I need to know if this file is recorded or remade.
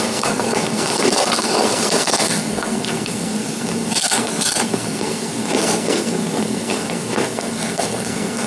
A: remade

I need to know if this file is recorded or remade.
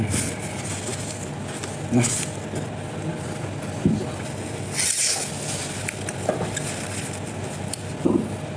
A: recorded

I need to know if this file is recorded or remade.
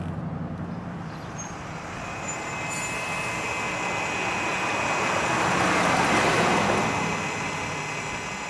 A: recorded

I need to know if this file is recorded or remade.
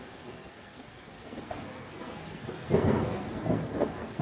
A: remade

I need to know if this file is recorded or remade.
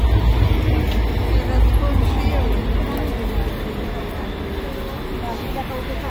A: recorded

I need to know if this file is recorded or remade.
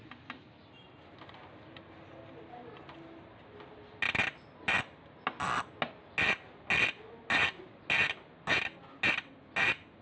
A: recorded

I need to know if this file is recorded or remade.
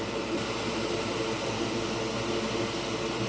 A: recorded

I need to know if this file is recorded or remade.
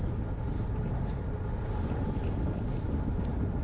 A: recorded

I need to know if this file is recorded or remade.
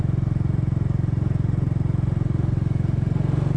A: recorded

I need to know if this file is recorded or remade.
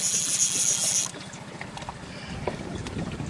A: recorded